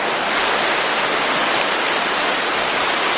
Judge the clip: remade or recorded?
recorded